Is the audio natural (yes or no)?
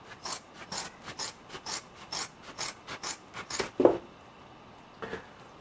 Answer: yes